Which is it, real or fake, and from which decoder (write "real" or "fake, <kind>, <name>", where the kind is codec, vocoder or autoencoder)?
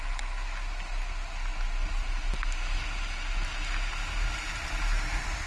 real